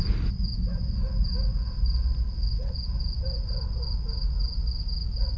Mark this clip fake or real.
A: real